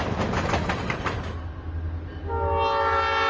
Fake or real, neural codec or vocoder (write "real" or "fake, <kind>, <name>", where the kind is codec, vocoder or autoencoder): real